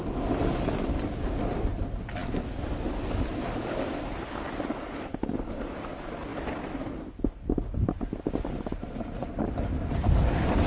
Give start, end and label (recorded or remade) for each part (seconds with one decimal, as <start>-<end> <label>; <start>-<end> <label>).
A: 0.0-10.7 recorded